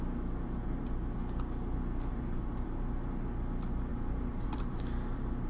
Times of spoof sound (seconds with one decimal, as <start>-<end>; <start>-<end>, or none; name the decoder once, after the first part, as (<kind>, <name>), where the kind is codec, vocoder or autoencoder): 2.1-3.0 (vocoder, BigVGAN v2); 3.9-4.8